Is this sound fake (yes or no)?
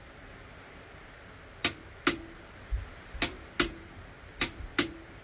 no